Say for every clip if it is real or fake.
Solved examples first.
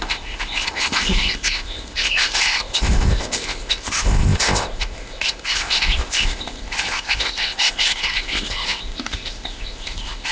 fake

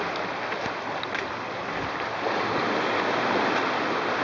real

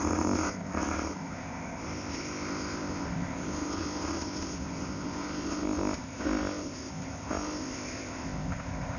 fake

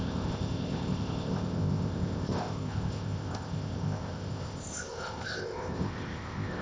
fake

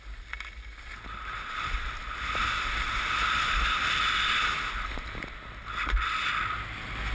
real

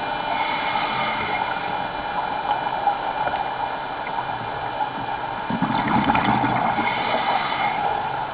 real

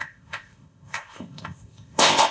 fake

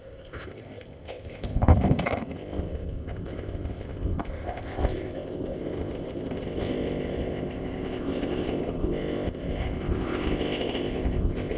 fake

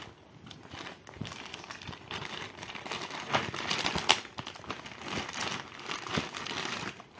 real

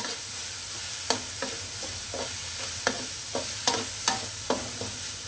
real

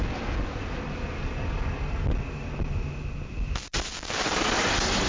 real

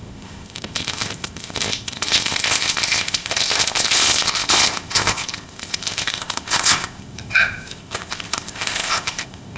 fake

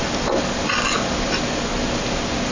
real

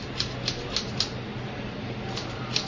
real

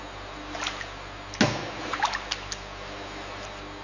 real